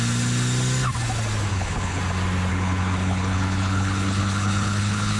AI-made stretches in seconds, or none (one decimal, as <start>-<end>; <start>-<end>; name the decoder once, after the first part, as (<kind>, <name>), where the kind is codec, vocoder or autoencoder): 1.5-2.0 (codec, HILCodec); 2.5-5.2